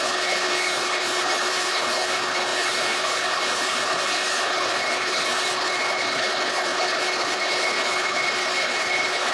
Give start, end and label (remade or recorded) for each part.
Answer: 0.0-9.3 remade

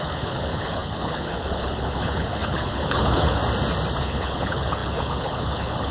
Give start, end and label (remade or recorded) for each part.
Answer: 0.0-3.4 remade; 3.4-4.0 recorded; 4.0-5.9 remade

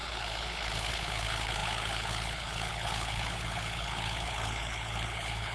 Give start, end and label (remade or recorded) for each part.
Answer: 0.0-5.5 remade

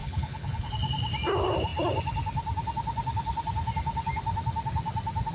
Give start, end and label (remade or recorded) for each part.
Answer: 0.0-0.7 remade; 0.7-5.3 recorded

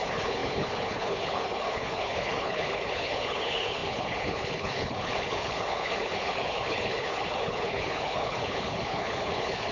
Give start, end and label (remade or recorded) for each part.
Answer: 0.0-9.7 remade

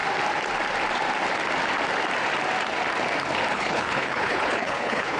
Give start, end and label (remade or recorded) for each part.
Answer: 0.0-3.5 recorded; 3.5-5.2 remade